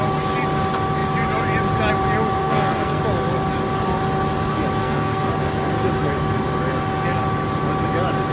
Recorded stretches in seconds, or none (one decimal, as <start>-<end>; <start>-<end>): 0.0-2.4; 3.0-4.8; 5.3-8.3

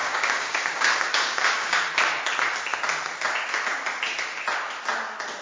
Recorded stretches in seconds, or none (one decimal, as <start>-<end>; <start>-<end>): 1.9-5.4

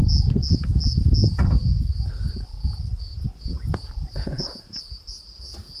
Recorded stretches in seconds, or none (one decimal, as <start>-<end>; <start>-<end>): 0.0-3.1; 4.8-5.8

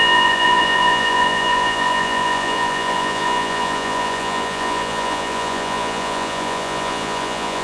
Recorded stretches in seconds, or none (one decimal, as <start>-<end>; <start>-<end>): none

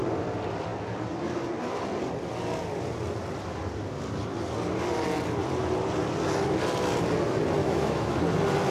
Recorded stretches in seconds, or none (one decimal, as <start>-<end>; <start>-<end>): 0.0-7.6; 8.2-8.7

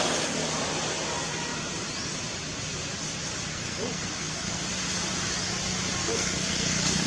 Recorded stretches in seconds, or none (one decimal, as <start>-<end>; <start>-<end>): 0.0-3.5; 4.6-6.0